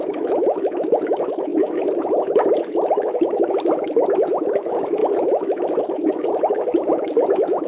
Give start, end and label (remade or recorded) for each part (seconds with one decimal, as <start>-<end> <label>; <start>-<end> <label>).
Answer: 0.0-7.7 remade